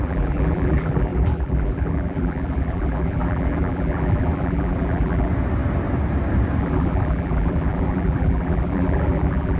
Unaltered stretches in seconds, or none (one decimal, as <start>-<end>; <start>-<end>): 5.3-6.6